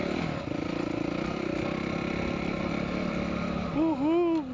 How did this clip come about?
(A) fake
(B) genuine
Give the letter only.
B